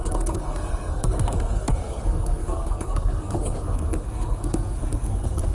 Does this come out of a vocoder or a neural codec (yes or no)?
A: yes